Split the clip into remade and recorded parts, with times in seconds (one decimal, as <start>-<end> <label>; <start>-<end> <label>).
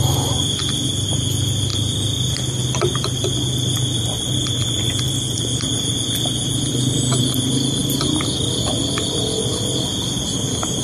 0.0-10.8 recorded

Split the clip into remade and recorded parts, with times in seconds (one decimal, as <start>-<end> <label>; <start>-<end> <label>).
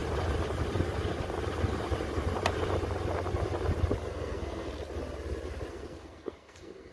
0.0-4.1 recorded; 4.1-4.7 remade; 4.7-5.7 recorded; 5.7-6.9 remade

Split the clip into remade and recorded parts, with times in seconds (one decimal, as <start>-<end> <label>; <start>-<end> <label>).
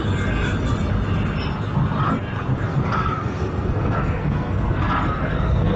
0.0-2.7 recorded; 2.7-5.8 remade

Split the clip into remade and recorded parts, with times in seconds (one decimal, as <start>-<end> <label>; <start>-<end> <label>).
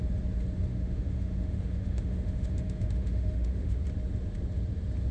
0.0-0.7 recorded; 0.7-3.8 remade; 3.8-5.1 recorded